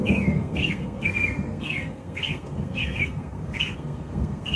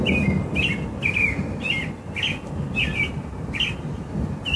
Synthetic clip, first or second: first